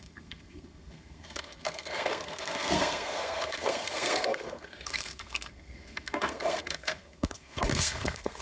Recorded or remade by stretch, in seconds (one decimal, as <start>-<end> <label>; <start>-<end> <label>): 0.0-8.4 remade